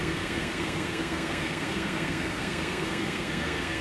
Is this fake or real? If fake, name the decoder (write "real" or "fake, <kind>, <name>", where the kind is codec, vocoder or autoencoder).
fake, codec, SNAC